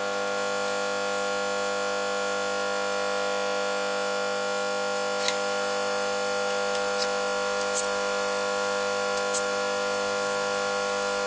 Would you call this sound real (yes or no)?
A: yes